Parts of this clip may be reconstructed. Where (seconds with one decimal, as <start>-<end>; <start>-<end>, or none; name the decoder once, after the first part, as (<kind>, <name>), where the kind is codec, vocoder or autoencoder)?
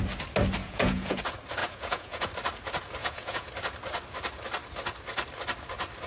0.6-1.2 (vocoder, Vocos); 1.6-2.3; 3.0-3.5